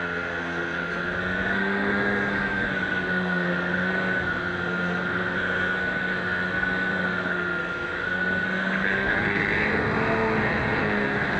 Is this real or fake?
fake